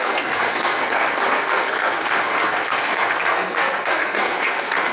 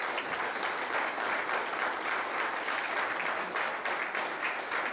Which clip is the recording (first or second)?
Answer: second